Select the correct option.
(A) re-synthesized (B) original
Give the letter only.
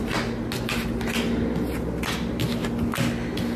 B